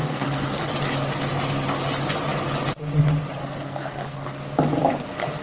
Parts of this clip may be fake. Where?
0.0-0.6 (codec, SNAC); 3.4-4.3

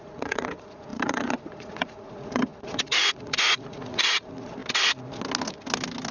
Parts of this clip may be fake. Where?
0.0-4.6 (vocoder, Vocos)

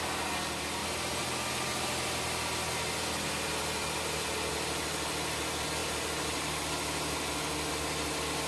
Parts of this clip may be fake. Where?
none

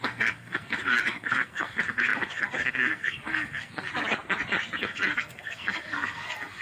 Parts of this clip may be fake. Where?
0.0-3.9 (codec, SNAC); 4.8-6.6

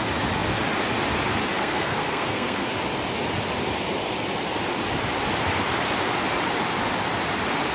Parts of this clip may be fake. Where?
1.6-2.7 (codec, SNAC)